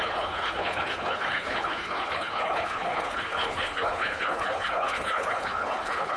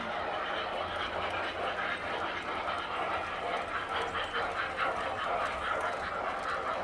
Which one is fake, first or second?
first